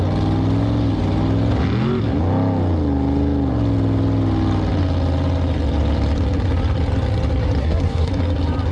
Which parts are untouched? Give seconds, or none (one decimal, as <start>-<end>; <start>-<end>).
0.0-7.6; 8.1-8.7